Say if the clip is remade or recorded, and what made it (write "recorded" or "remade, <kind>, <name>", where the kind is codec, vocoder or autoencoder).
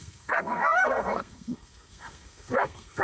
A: remade, codec, SNAC